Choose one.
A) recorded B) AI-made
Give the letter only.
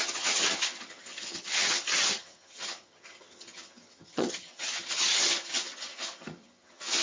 B